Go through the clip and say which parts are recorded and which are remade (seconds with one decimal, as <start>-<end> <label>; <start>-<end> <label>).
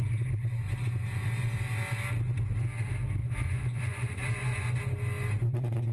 0.0-3.2 recorded; 3.2-4.8 remade; 4.8-5.9 recorded